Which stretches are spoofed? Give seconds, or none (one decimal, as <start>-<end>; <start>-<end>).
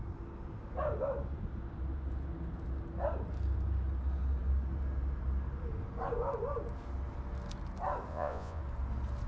8.1-8.6